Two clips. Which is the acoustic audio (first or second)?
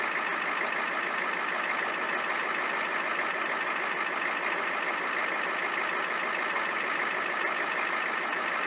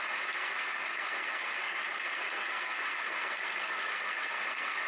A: first